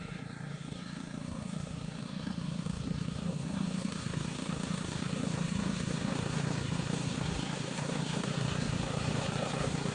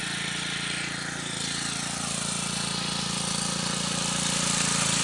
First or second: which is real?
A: second